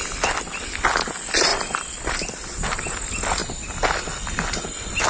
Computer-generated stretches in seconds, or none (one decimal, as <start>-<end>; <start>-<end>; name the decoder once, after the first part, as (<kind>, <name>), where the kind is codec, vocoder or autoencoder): 1.5-2.6 (vocoder, BigVGAN v2); 3.4-4.0